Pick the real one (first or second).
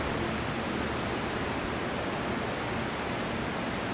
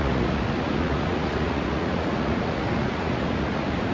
first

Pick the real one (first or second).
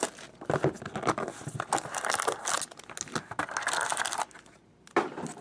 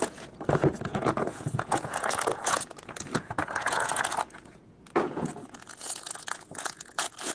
first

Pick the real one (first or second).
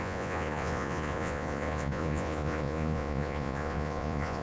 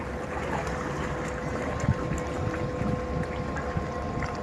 second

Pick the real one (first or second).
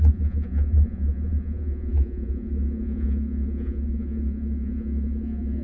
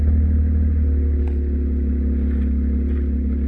second